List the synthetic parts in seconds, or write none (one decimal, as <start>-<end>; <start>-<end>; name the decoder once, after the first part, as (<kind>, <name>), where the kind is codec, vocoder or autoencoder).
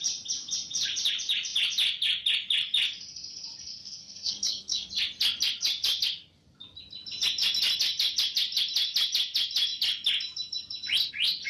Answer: 3.7-4.9 (codec, SNAC)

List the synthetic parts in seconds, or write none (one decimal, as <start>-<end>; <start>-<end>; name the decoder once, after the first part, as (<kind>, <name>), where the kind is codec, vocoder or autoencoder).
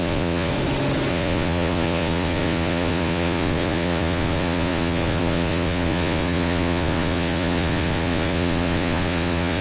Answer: 0.0-0.5 (vocoder, Vocos); 1.1-9.6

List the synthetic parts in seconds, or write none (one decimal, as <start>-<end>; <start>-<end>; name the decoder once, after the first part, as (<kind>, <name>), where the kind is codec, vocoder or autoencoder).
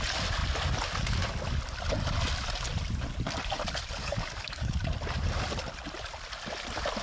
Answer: 4.0-4.8 (codec, DAC)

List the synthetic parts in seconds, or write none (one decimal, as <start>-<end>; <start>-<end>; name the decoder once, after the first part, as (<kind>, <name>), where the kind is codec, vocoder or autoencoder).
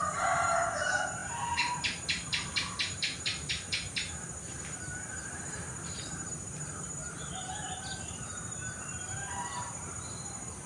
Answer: 0.0-10.7 (vocoder, BigVGAN v2)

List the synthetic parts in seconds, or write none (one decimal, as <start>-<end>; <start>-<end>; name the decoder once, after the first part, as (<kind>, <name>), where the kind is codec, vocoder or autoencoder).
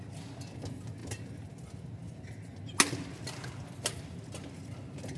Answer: none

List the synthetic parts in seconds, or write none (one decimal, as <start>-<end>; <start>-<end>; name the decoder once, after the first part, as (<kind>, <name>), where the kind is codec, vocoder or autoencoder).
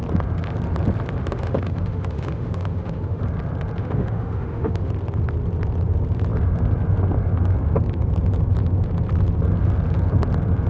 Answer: 1.2-3.2 (autoencoder, DAC-VAE); 3.8-4.9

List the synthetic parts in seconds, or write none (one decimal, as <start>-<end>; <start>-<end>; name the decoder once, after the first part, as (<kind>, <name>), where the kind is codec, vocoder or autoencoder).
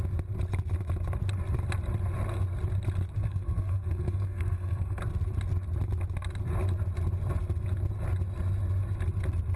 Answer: 3.2-5.0 (codec, SNAC)